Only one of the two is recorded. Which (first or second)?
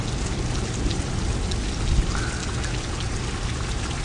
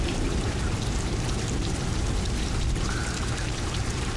first